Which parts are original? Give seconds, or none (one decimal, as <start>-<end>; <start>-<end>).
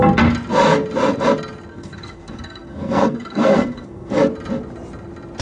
0.0-1.7; 4.2-5.4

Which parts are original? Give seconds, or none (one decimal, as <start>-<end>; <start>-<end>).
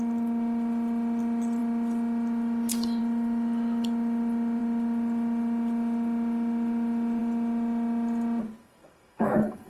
0.0-8.6